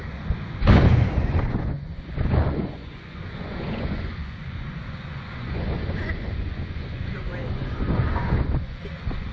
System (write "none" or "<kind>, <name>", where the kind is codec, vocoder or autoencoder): vocoder, Vocos